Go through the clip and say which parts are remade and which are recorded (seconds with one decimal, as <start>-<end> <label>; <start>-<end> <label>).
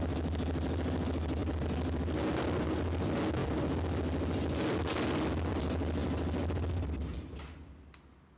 0.0-8.4 recorded